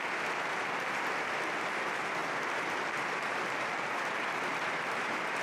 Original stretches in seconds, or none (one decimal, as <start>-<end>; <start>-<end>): 0.0-5.4